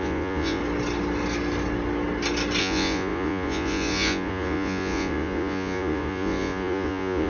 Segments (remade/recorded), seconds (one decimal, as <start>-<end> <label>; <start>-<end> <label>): 0.0-0.6 remade; 0.6-2.6 recorded; 2.6-7.3 remade